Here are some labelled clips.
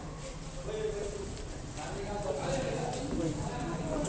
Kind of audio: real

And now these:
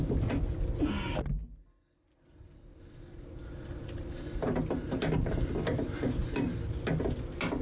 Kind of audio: real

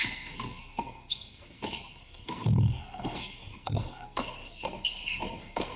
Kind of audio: fake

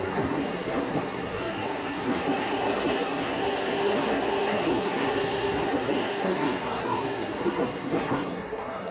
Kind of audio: fake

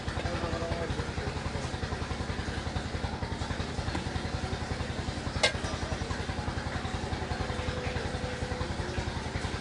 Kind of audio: real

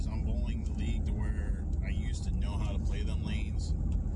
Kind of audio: real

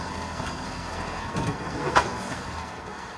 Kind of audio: fake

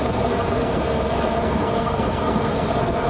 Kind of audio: fake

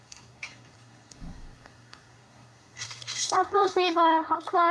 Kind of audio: fake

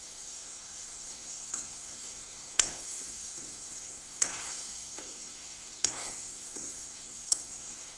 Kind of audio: fake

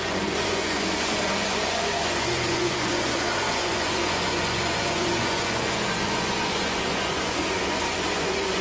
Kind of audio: fake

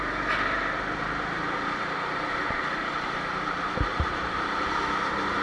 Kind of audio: fake